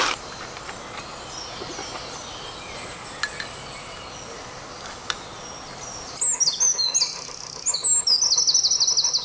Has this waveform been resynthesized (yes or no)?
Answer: no